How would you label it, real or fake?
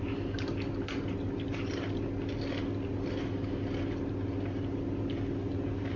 real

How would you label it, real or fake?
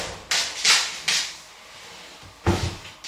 real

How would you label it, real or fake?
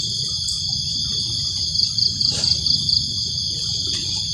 real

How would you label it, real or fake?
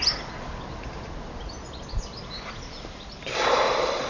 real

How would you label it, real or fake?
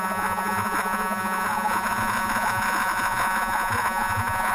fake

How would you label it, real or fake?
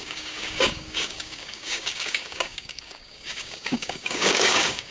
fake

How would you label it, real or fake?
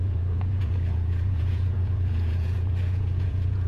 fake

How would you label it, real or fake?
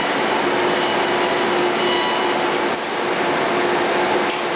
real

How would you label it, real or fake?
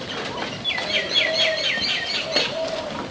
real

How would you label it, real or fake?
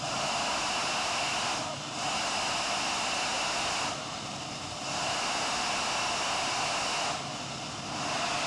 real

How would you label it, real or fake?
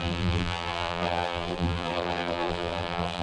fake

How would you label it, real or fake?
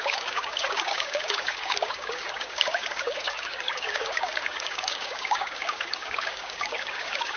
fake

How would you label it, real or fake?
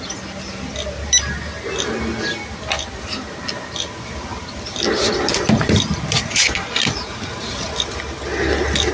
real